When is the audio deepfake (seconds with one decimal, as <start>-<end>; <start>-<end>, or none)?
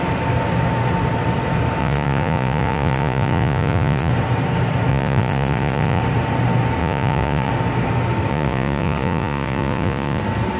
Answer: 1.8-4.1; 4.9-6.0; 6.8-7.5; 8.3-10.2